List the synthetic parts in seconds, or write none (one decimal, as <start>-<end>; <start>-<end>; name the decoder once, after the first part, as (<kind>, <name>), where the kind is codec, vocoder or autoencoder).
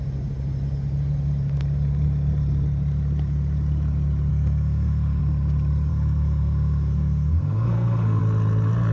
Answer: 4.3-5.2 (codec, SNAC); 5.9-8.2